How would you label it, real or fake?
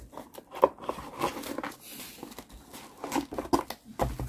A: real